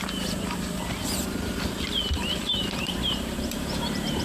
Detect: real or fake fake